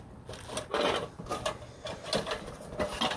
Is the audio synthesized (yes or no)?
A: no